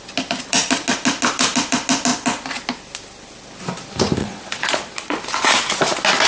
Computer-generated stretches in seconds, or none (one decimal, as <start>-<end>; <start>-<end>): 4.2-5.2